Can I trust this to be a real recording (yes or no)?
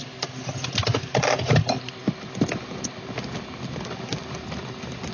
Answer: yes